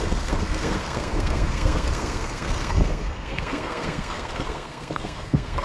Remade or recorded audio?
remade